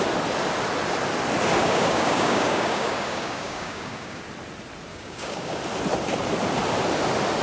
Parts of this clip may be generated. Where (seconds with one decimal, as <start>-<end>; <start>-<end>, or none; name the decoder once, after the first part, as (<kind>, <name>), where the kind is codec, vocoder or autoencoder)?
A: 1.6-4.2 (codec, DAC); 4.9-5.6